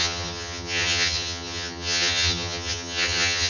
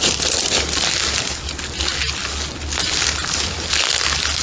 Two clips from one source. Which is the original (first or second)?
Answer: second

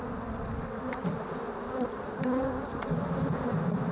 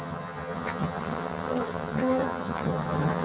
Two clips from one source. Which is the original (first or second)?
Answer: first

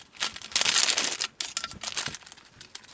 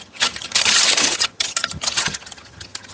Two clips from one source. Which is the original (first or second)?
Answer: first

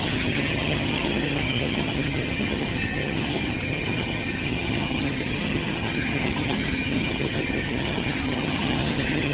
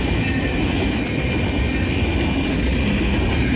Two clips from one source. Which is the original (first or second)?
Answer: second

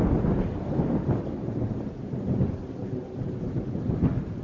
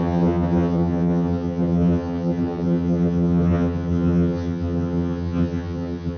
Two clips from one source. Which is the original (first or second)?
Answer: first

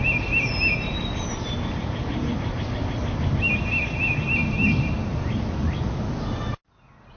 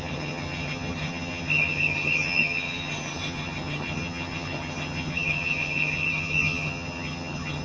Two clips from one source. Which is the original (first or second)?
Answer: first